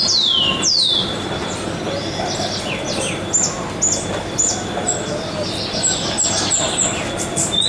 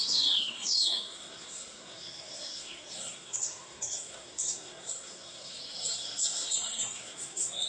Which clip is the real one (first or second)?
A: first